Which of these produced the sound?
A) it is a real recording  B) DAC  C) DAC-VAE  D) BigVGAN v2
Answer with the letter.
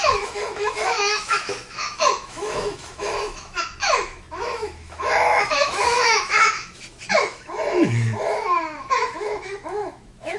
C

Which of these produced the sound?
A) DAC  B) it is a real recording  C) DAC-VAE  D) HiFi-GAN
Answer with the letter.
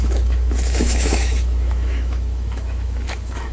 C